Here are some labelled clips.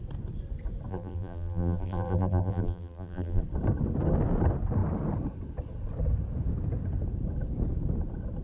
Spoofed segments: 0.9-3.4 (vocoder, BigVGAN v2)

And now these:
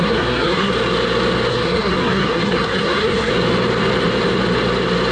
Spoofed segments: 0.0-0.7 (codec, SNAC); 1.5-3.3

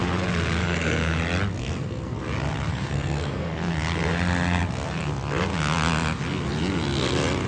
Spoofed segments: 0.6-1.2 (codec, SNAC); 1.6-2.2; 2.7-3.7

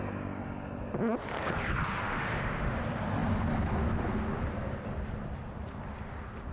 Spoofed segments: 1.8-2.8 (autoencoder, DAC-VAE)

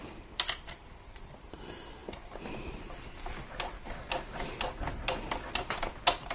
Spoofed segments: none

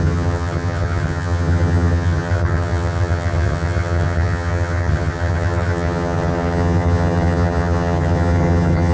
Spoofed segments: 0.0-8.9 (vocoder, HiFi-GAN)